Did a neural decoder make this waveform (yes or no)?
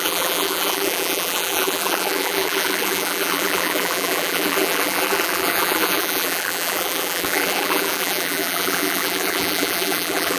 yes